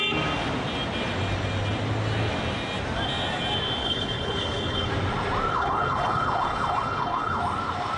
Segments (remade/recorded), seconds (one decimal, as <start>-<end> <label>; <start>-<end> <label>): 0.0-3.8 recorded; 3.8-4.9 remade; 4.9-5.5 recorded; 5.5-7.4 remade; 7.4-8.0 recorded